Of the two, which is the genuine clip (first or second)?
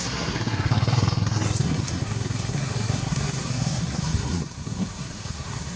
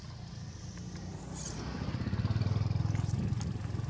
second